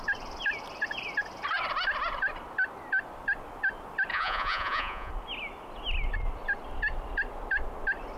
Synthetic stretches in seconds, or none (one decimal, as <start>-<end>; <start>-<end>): 4.1-5.1